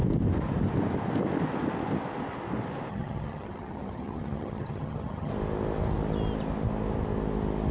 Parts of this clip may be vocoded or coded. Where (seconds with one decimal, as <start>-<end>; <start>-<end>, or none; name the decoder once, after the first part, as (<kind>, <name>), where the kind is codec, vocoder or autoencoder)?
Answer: 2.9-5.3 (vocoder, HiFi-GAN)